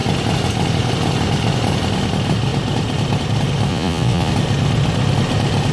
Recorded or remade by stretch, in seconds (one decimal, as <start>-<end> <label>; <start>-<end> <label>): 0.0-3.7 recorded; 3.7-4.3 remade; 4.3-5.7 recorded